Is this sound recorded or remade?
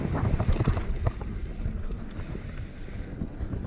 recorded